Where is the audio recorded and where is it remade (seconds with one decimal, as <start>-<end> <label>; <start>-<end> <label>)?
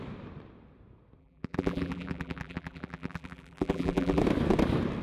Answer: 0.0-1.2 recorded; 1.2-4.2 remade; 4.2-5.0 recorded